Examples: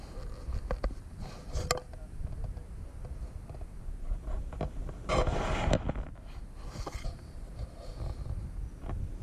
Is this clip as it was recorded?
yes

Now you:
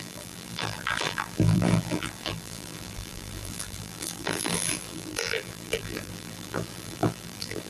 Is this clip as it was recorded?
no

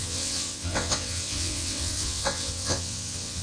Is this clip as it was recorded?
no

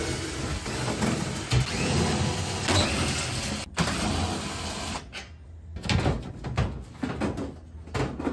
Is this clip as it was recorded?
yes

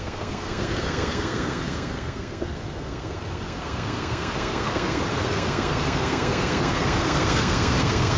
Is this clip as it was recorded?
no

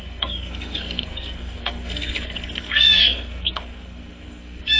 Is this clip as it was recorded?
no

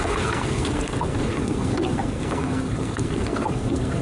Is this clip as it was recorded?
no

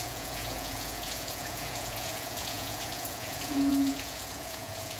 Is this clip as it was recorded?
no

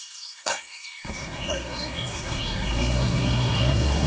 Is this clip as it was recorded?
no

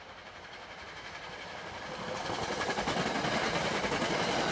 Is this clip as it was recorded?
yes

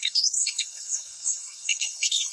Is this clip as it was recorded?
no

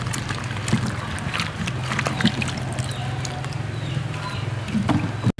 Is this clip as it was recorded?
yes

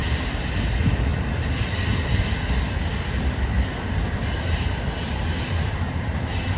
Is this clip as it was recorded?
yes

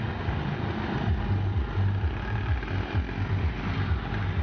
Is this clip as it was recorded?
yes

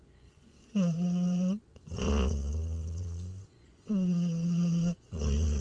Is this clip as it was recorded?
no